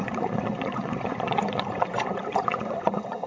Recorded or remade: remade